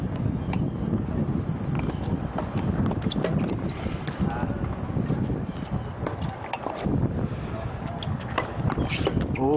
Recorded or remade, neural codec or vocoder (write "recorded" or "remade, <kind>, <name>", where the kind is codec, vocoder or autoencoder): recorded